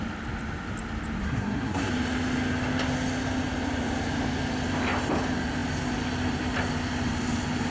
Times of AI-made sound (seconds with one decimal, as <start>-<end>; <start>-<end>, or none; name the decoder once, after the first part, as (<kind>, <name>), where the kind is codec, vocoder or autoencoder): 1.2-1.9 (codec, SNAC)

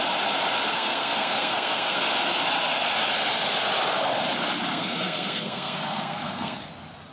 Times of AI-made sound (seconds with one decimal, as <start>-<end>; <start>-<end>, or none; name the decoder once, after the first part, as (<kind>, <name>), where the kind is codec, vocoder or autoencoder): 0.7-2.0 (codec, SNAC); 4.7-6.6

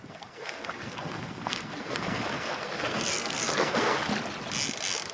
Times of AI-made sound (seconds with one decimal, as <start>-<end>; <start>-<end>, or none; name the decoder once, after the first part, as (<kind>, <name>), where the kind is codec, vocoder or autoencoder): 0.0-4.1 (codec, SNAC)

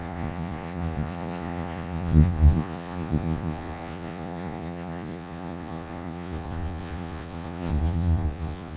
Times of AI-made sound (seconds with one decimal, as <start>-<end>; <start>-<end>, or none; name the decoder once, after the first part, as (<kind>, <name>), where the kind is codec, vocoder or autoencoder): 0.0-8.8 (vocoder, Vocos)

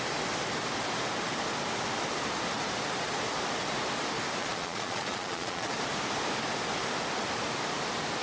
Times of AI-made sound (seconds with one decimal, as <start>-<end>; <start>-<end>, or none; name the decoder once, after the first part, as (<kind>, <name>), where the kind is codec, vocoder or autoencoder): 4.4-5.7 (vocoder, Vocos)

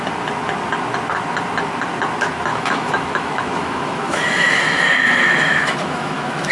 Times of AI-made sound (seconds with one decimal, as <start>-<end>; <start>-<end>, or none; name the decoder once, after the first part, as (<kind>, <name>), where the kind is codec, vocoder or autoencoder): 2.5-6.5 (autoencoder, DAC-VAE)

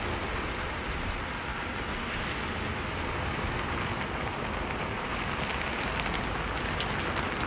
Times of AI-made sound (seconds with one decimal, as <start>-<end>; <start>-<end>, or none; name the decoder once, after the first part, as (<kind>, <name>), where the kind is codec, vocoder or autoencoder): 1.5-5.4 (vocoder, BigVGAN v2)